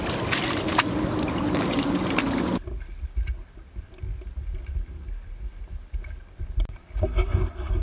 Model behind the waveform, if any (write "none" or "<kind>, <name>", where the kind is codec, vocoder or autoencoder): none